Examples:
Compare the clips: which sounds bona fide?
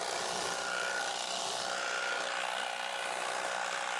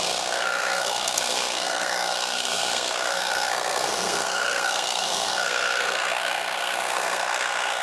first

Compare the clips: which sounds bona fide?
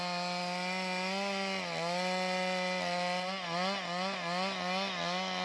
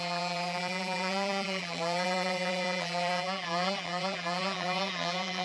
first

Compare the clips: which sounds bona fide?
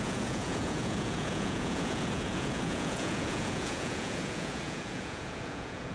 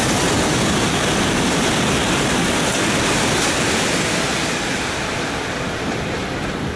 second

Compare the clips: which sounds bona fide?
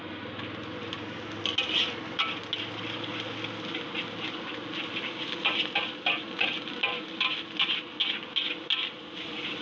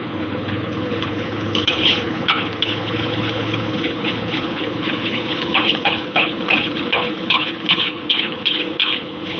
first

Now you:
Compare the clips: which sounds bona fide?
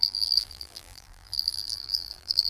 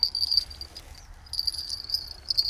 second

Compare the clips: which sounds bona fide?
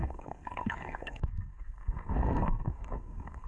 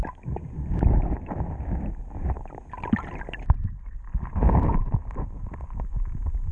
second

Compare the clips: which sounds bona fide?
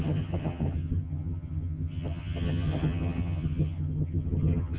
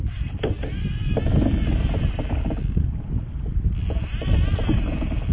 second